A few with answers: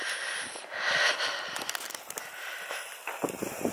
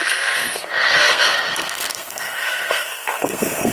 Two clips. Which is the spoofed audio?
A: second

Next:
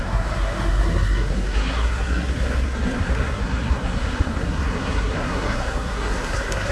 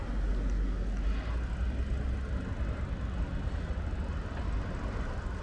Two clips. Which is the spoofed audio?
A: first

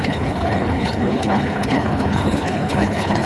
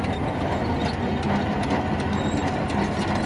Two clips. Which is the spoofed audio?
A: first